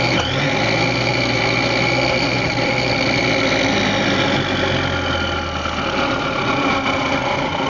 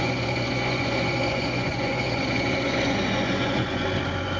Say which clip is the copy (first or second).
second